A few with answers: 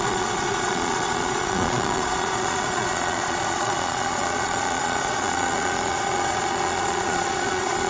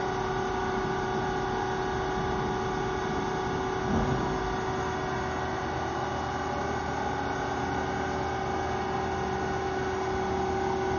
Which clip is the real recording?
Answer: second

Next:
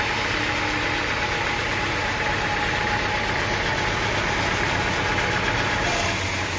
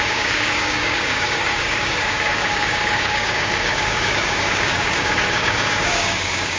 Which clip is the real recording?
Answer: first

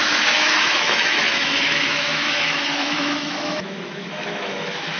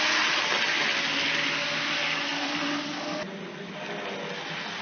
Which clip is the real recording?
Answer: second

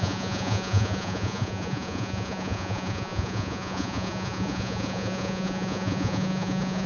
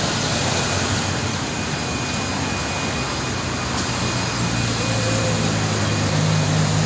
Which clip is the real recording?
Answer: second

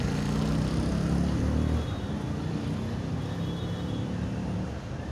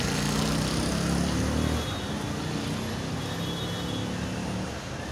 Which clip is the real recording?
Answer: second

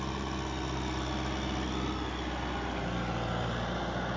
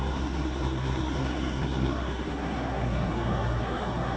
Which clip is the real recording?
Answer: first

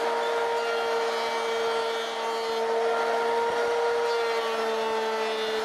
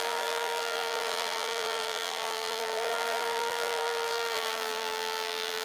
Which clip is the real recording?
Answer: first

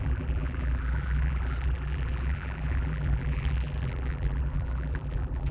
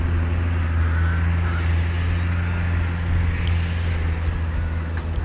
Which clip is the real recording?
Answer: second